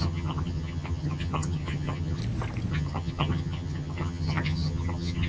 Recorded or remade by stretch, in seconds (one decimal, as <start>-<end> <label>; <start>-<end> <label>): 0.0-2.2 remade; 2.2-2.7 recorded; 2.7-5.3 remade